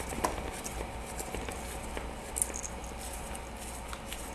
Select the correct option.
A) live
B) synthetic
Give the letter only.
A